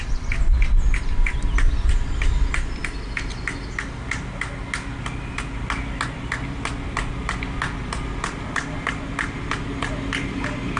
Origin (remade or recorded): recorded